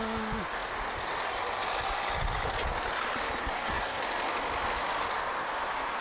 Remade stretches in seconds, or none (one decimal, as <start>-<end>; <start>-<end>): 3.4-4.0